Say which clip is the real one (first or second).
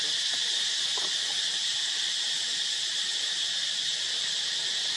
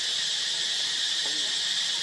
second